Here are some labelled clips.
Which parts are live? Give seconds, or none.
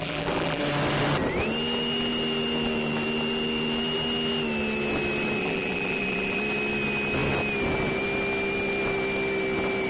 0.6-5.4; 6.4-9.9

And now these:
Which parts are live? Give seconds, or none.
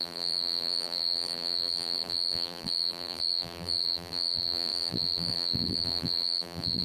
none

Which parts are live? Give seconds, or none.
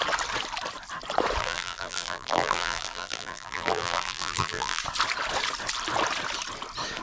0.0-1.4; 4.8-7.0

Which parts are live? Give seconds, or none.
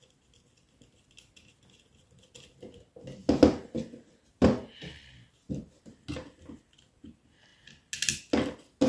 0.0-8.9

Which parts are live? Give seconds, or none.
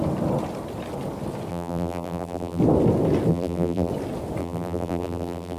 0.0-1.5; 2.6-3.3; 3.9-4.4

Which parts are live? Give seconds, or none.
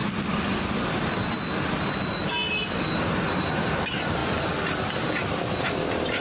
0.0-3.7; 4.2-5.6